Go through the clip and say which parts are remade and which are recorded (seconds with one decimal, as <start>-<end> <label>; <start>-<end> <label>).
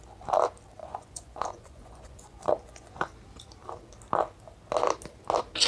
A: 0.0-0.8 recorded; 0.8-3.1 remade; 3.1-5.7 recorded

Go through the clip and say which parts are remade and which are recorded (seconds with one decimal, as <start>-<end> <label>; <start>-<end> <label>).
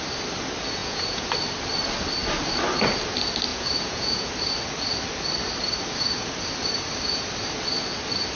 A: 0.0-0.8 recorded; 0.8-1.3 remade; 1.3-3.5 recorded; 3.5-4.3 remade; 4.3-8.4 recorded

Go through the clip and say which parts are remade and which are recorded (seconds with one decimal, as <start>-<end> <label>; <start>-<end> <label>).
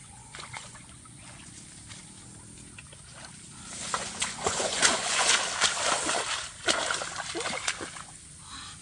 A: 0.0-1.5 remade; 1.5-3.8 recorded; 3.8-5.3 remade; 5.3-8.8 recorded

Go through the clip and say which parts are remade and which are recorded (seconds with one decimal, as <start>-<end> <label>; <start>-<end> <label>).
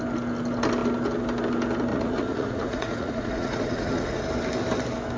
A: 0.0-1.9 recorded; 1.9-4.2 remade; 4.2-5.2 recorded